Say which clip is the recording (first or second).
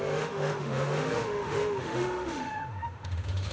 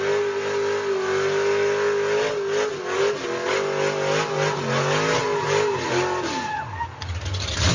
second